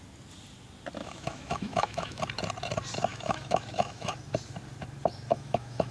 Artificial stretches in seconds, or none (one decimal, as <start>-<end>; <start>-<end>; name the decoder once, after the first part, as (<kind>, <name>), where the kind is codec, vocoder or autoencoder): 1.0-2.2 (autoencoder, DAC-VAE); 3.1-4.1; 5.3-5.9

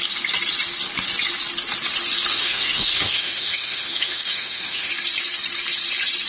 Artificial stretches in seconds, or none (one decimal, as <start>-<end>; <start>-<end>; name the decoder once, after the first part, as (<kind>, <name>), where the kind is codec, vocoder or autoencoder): 2.3-4.9 (autoencoder, DAC-VAE)

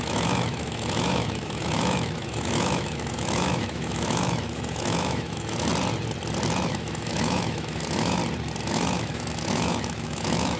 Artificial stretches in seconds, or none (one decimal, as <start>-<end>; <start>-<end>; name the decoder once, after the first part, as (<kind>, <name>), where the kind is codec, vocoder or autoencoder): 0.0-5.7 (autoencoder, DAC-VAE); 6.7-8.2; 8.7-10.6

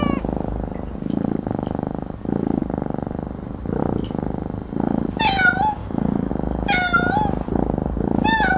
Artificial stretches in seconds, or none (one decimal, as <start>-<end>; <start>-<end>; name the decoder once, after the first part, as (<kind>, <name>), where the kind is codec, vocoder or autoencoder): 5.8-6.3 (autoencoder, DAC-VAE)

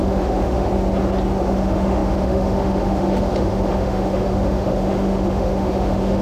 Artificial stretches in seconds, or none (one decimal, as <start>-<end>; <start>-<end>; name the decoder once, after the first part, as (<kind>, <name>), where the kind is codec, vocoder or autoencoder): 0.0-0.7 (autoencoder, DAC-VAE); 1.4-6.2